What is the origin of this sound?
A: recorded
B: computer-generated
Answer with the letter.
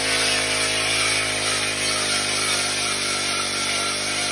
A